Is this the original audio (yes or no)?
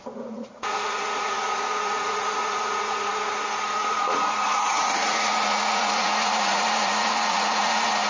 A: no